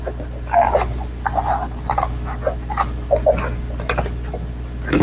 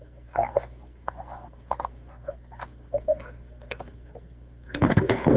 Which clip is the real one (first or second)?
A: first